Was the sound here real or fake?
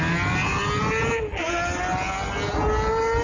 real